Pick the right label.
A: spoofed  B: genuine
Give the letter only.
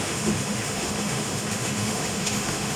A